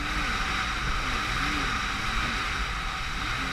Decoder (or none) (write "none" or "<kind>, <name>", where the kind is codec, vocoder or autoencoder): none